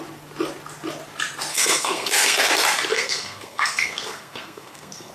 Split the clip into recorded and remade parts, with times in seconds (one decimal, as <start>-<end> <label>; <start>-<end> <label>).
0.0-1.5 recorded; 1.5-2.5 remade; 2.5-2.9 recorded; 2.9-5.1 remade